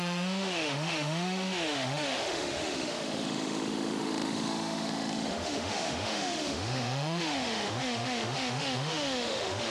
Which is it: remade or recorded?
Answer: remade